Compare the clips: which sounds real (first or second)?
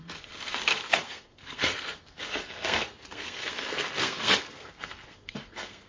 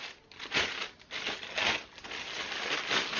second